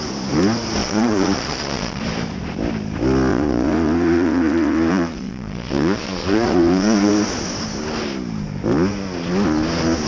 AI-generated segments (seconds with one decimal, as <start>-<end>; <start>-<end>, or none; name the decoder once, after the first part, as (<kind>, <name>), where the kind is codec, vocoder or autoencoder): 0.8-2.0 (vocoder, Vocos); 3.3-7.1